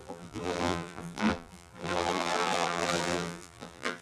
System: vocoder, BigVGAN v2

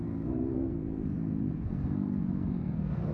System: codec, SNAC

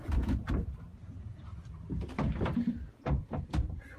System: vocoder, BigVGAN v2